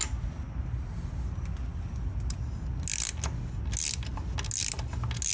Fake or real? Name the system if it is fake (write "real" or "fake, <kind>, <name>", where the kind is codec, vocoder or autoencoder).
real